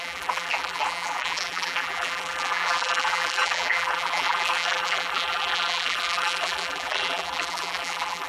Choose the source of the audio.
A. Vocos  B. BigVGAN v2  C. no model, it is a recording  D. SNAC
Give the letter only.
B